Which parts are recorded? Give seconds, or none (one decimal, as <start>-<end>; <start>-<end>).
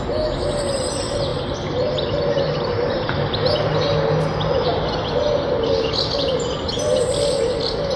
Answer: 0.0-1.3; 3.5-8.0